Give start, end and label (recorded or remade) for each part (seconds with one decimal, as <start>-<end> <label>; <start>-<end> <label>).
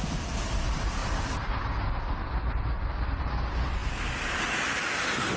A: 0.0-5.4 recorded